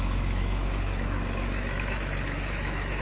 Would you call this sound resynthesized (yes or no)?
yes